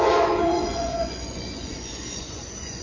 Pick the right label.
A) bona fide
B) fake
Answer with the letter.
B